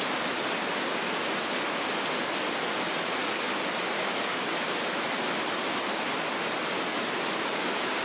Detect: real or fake real